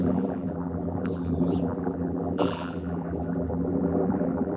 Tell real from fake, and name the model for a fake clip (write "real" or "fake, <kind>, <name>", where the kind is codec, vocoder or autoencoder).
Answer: fake, vocoder, BigVGAN v2